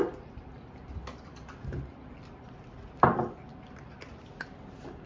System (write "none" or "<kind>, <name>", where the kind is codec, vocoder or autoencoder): none